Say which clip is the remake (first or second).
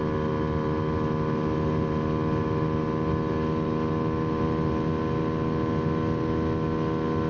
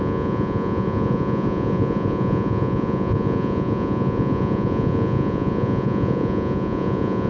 second